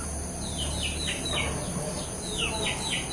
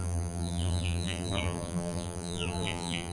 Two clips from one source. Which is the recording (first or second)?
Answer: first